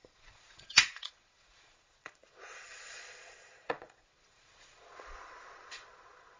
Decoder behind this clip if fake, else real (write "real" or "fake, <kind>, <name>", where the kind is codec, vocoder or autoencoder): fake, vocoder, Vocos